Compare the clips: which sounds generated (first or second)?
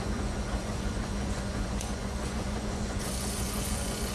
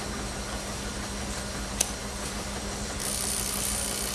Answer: first